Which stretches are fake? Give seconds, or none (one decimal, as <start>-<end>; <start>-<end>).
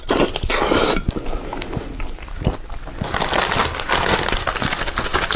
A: none